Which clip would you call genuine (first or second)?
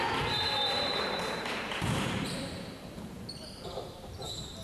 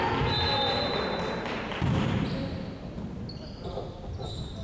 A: second